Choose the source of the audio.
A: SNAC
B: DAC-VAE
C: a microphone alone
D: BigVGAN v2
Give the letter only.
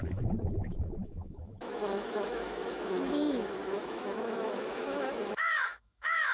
B